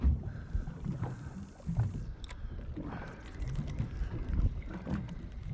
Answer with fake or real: real